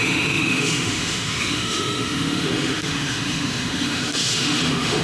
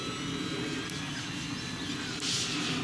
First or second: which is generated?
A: first